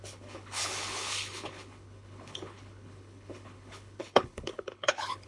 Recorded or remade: remade